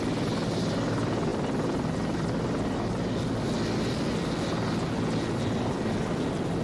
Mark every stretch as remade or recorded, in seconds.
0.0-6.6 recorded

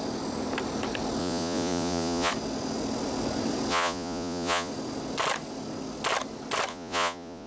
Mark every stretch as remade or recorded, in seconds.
0.0-1.2 recorded; 1.2-2.3 remade; 2.3-3.7 recorded; 3.7-4.7 remade; 4.7-6.7 recorded; 6.7-7.5 remade

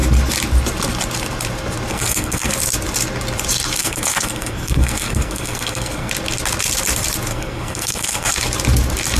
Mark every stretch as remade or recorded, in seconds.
0.0-1.9 recorded; 1.9-2.5 remade; 2.5-3.8 recorded; 3.8-6.1 remade; 6.1-7.3 recorded; 7.3-8.3 remade; 8.3-9.2 recorded

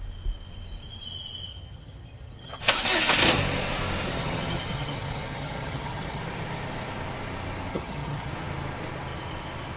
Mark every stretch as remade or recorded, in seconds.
0.0-1.5 recorded; 1.5-2.6 remade; 2.6-4.1 recorded; 4.1-6.2 remade; 6.2-7.7 recorded; 7.7-8.3 remade; 8.3-9.8 recorded

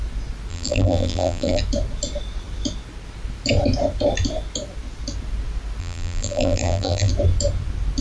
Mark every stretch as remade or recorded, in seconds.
0.0-0.5 recorded; 0.5-1.6 remade; 1.6-5.8 recorded; 5.8-7.1 remade; 7.1-8.0 recorded

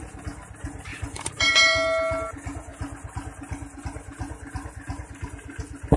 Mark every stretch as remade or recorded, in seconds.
0.0-0.9 recorded; 0.9-1.5 remade; 1.5-6.0 recorded

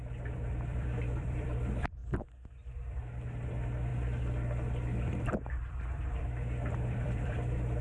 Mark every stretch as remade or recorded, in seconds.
0.0-2.0 remade; 2.0-2.7 recorded; 2.7-3.9 remade; 3.9-5.2 recorded; 5.2-7.8 remade

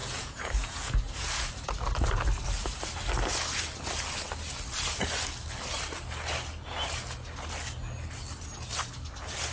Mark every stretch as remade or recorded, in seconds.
0.0-1.6 remade; 1.6-9.5 recorded